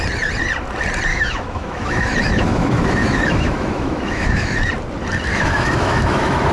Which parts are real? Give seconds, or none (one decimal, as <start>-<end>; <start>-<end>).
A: 0.0-1.1; 4.7-5.3